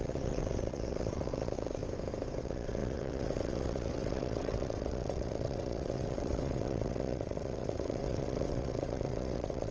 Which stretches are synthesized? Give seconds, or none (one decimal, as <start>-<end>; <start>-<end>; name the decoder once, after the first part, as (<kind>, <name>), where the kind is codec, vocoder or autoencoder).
0.0-1.8 (vocoder, WaveNeXt); 2.4-9.7